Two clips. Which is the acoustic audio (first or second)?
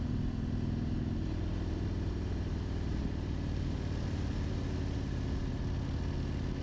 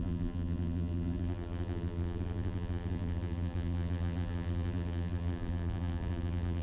first